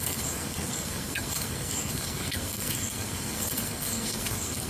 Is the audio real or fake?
fake